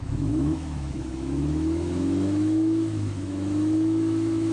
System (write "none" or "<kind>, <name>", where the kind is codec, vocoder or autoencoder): autoencoder, DAC-VAE